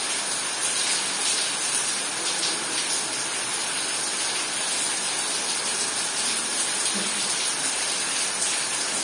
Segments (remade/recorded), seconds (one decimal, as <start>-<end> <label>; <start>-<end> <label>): 0.0-9.0 recorded